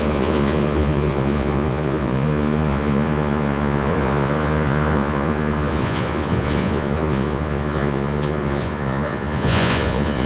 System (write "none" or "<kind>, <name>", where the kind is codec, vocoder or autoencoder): vocoder, Vocos